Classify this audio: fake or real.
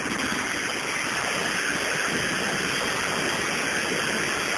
real